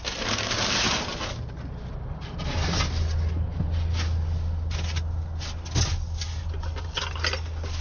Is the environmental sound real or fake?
real